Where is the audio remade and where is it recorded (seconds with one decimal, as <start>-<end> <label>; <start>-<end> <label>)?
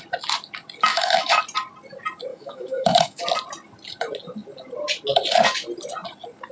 0.0-0.9 recorded; 0.9-1.4 remade; 1.4-2.3 recorded; 2.3-3.2 remade; 3.2-6.5 recorded